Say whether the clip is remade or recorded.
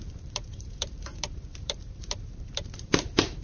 remade